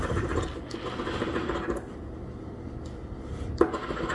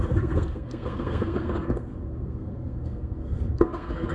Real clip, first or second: first